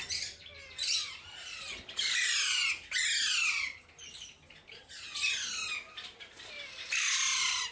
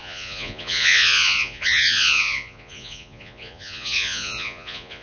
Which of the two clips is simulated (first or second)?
second